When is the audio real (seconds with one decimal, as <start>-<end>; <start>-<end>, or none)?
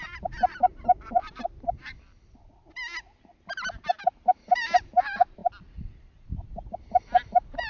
1.2-4.0; 5.4-6.7